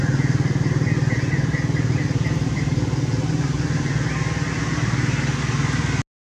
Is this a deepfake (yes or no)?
no